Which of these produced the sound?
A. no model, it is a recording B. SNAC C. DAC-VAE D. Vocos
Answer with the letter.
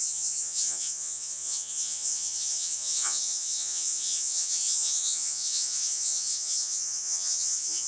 D